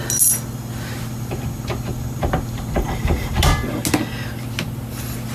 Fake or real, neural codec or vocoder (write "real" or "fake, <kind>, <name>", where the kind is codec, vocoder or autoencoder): real